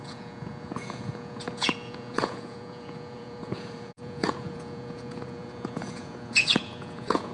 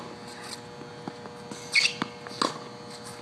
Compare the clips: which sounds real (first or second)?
second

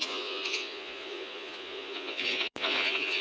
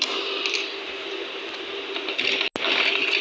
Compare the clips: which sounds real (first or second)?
second